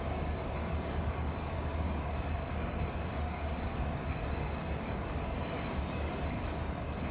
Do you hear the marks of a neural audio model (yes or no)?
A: yes